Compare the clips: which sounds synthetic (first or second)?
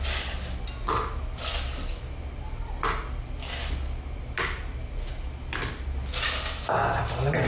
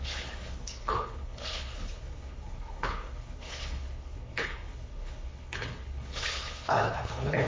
second